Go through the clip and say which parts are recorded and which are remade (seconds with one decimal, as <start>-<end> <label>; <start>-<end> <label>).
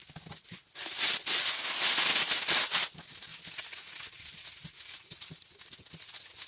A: 0.0-6.5 recorded